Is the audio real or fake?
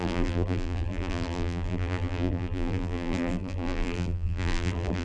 fake